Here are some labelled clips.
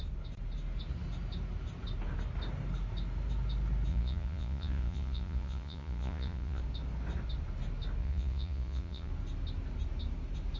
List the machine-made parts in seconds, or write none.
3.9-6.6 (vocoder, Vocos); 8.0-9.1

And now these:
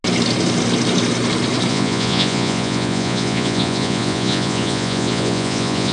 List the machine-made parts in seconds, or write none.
1.7-5.9 (vocoder, Vocos)

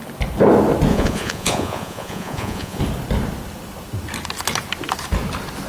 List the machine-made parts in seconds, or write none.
0.9-2.8 (vocoder, Vocos)